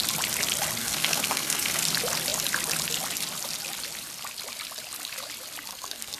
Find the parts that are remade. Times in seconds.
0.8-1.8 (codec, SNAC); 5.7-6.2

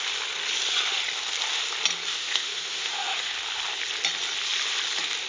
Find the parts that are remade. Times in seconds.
2.1-3.3 (autoencoder, DAC-VAE)

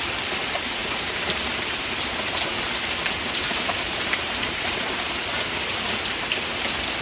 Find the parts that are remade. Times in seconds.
0.8-5.0 (vocoder, BigVGAN v2)

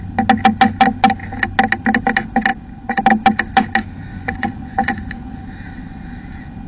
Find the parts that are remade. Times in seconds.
2.5-3.0 (vocoder, Vocos); 4.1-5.4